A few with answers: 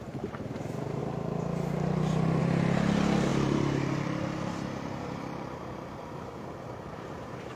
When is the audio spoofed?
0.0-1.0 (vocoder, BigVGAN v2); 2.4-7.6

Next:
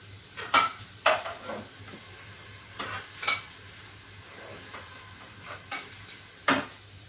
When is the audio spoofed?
none

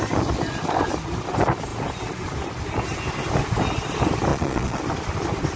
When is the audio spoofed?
4.3-4.8 (vocoder, Vocos)

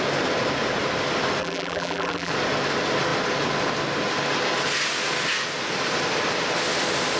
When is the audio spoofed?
1.4-2.3 (vocoder, BigVGAN v2)